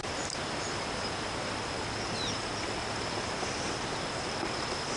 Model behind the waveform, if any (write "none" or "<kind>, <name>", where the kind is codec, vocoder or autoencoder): none